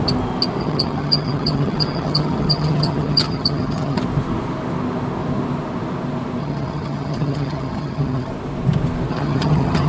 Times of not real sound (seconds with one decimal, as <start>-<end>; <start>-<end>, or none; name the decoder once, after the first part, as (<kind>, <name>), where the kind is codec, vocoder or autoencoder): 0.6-4.0 (vocoder, HiFi-GAN); 6.4-8.3; 9.1-9.9